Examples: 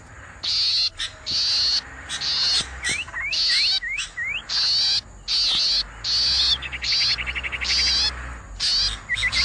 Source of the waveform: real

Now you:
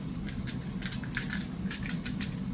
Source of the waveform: real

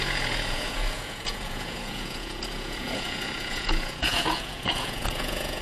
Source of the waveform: fake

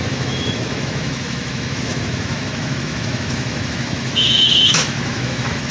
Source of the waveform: fake